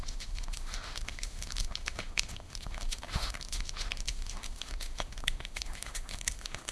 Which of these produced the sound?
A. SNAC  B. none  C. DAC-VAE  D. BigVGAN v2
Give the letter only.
C